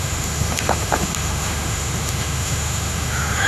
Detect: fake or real fake